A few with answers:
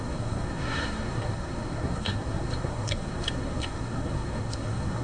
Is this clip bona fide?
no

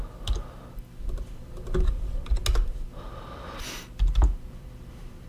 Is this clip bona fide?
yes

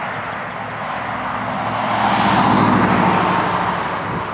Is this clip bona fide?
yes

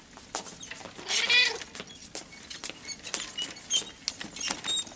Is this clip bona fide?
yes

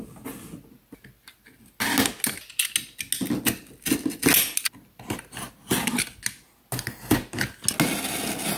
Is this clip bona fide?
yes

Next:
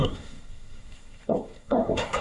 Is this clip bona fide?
no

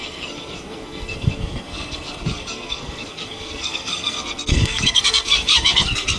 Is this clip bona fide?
no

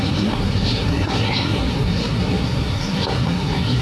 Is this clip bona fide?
no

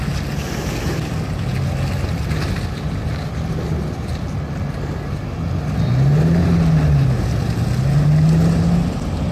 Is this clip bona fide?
yes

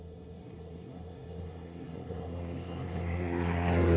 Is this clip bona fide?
no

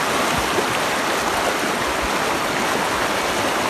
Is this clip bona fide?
yes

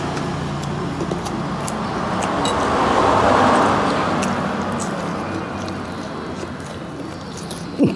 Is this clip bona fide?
yes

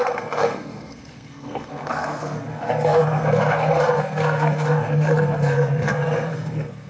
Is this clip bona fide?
no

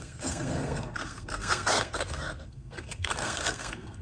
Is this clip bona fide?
no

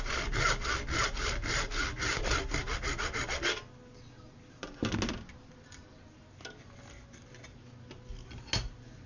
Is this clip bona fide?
yes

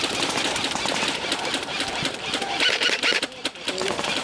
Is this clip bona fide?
yes